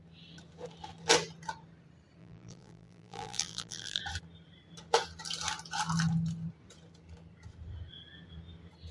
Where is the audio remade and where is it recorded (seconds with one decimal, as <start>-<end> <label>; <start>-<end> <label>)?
0.0-2.2 recorded; 2.2-4.0 remade; 4.0-8.9 recorded